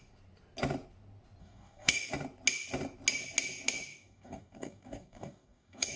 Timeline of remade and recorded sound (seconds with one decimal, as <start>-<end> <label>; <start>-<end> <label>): 0.0-1.4 recorded; 1.4-2.1 remade; 2.1-3.9 recorded; 3.9-6.0 remade